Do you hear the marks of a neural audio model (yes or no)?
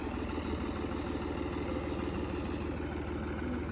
no